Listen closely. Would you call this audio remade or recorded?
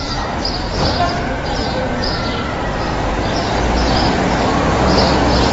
recorded